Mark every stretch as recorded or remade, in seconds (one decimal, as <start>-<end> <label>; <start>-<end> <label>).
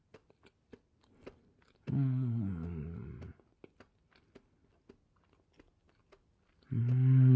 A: 0.0-7.4 recorded